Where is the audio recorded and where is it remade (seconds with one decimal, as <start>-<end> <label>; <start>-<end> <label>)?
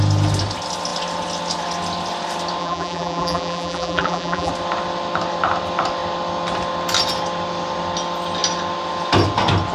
0.0-2.6 recorded; 2.6-4.5 remade; 4.5-9.7 recorded